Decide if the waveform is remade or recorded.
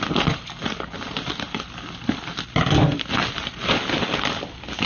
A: recorded